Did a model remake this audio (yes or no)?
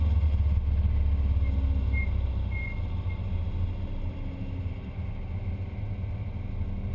no